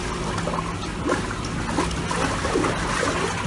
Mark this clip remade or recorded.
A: recorded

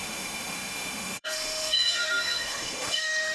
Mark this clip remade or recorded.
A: remade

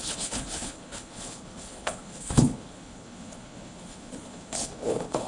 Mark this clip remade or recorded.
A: remade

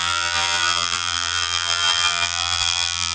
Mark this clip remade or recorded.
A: remade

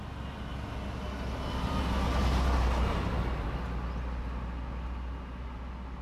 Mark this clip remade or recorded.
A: recorded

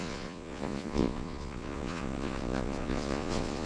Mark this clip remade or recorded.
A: remade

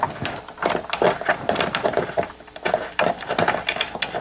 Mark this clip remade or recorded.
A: recorded